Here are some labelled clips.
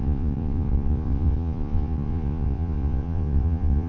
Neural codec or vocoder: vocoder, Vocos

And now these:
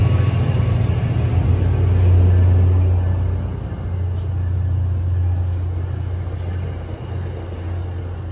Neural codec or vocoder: none